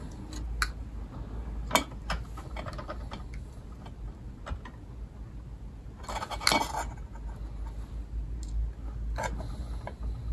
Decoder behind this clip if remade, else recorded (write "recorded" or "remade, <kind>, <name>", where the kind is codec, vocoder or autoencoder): recorded